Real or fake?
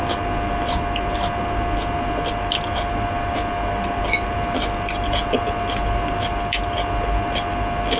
real